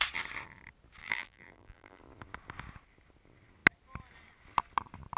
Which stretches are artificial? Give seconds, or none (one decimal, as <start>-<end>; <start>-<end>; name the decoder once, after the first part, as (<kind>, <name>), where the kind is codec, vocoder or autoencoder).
1.0-2.0 (vocoder, BigVGAN v2)